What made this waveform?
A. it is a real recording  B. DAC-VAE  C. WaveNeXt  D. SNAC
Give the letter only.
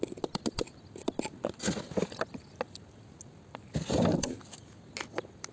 A